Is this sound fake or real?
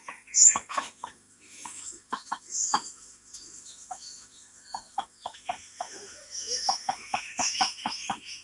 fake